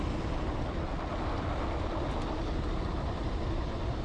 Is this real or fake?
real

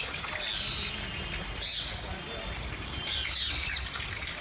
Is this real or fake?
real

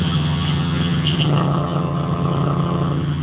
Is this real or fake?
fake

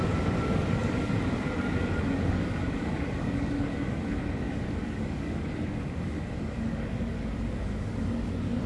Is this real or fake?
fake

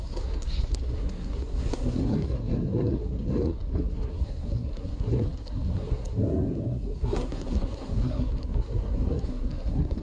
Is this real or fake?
fake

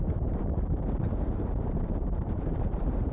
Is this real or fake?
fake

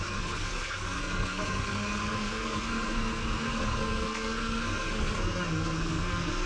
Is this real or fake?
fake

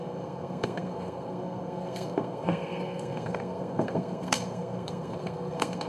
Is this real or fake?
fake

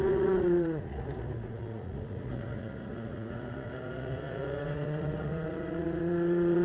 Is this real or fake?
fake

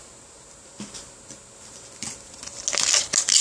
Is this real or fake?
real